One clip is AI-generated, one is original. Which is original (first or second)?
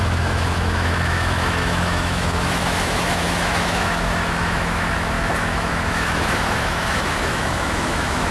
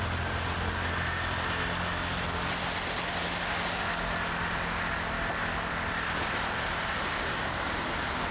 second